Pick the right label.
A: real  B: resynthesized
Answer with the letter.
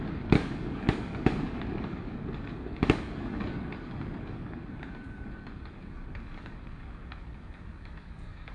B